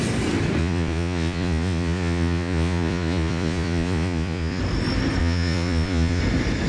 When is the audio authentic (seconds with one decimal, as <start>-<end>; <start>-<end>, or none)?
0.0-0.6; 4.6-5.2; 6.2-6.7